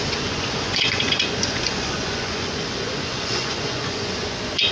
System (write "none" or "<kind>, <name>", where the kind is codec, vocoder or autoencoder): vocoder, Vocos